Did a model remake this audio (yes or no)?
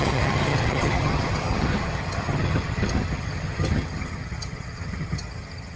yes